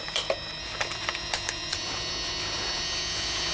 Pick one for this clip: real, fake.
fake